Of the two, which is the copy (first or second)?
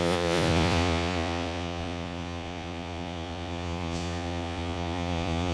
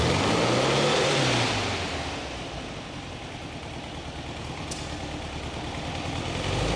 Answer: first